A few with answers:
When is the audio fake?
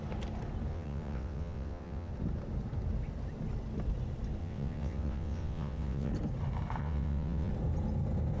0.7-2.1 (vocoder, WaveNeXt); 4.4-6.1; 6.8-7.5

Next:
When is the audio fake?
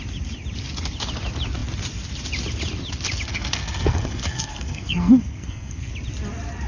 3.3-5.9 (codec, SNAC)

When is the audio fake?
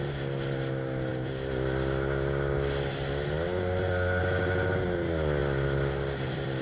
none